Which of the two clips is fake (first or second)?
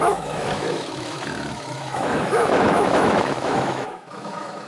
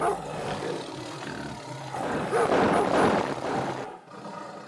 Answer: first